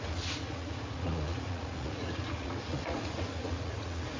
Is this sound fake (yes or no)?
yes